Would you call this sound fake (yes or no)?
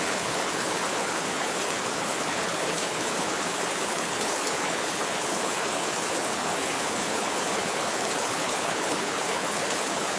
yes